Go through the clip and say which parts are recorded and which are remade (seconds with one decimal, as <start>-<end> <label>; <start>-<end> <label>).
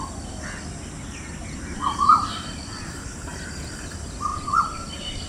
0.0-1.4 recorded; 1.4-3.0 remade; 3.0-4.3 recorded; 4.3-5.3 remade